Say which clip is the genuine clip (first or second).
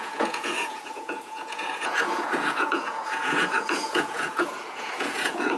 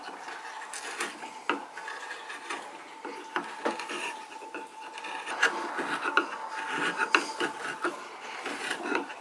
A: second